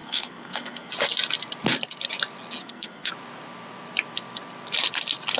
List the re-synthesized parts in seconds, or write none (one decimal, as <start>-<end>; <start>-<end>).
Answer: 0.0-0.9; 2.6-3.1